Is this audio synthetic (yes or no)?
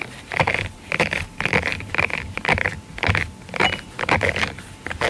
no